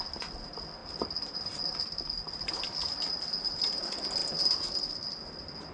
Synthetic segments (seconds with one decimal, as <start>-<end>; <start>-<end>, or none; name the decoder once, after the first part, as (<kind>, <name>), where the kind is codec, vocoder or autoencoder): none